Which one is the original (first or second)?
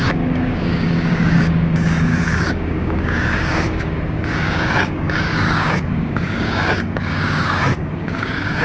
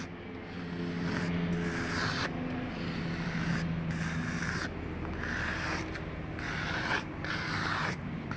second